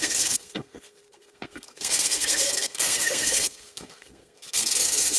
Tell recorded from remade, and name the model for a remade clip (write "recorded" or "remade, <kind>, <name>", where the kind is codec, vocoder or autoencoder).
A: remade, codec, SNAC